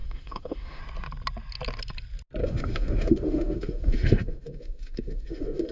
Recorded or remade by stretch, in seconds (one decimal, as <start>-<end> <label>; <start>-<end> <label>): 0.0-0.8 remade; 0.8-2.4 recorded; 2.4-5.7 remade